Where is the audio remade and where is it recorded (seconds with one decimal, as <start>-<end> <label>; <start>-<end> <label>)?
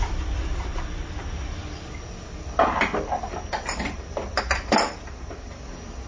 0.0-6.1 recorded